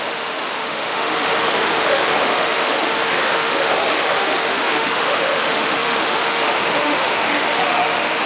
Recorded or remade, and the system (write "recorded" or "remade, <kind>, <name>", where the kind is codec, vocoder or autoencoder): remade, autoencoder, DAC-VAE